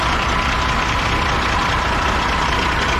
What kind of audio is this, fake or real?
real